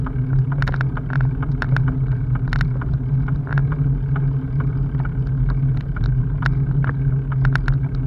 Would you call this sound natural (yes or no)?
yes